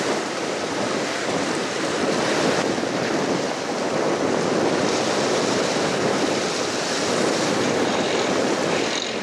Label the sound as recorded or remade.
remade